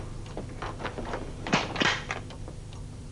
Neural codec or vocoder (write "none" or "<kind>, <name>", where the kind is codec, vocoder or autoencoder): vocoder, BigVGAN v2